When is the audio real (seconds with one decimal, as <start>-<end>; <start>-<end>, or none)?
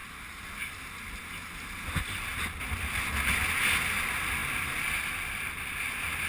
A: 0.0-6.3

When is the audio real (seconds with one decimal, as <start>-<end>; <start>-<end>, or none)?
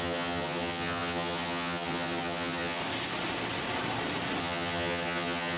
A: 2.8-4.4